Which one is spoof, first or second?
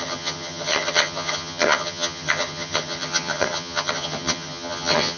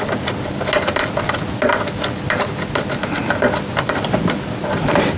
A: first